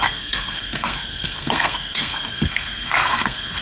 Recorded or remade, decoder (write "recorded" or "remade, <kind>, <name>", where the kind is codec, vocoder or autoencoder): remade, codec, SNAC